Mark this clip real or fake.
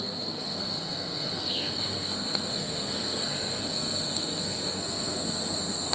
fake